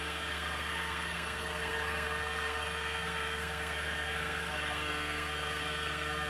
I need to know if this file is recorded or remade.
remade